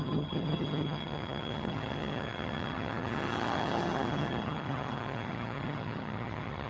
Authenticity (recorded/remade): remade